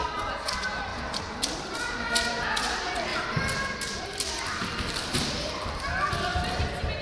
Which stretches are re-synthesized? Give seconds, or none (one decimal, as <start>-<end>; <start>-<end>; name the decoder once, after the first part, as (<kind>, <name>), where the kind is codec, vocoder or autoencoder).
none